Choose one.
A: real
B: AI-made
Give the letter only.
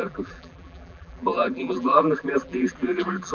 B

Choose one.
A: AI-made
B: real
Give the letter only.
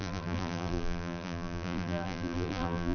A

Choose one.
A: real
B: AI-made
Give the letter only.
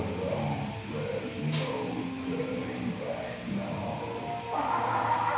A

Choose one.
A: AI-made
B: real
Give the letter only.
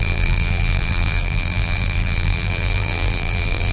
A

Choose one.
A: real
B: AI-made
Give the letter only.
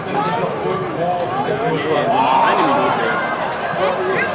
B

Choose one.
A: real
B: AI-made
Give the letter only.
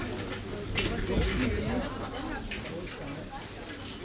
A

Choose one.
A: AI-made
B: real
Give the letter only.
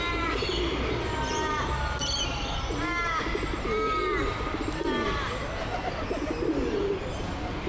B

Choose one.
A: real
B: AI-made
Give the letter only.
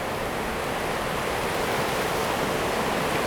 A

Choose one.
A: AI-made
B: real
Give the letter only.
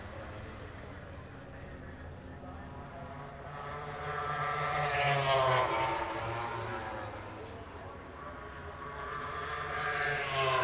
B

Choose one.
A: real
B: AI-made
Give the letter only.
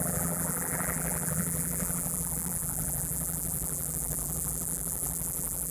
B